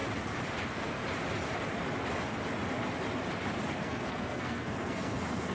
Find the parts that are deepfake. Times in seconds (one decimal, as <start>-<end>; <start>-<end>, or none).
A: 0.6-1.0; 3.7-5.5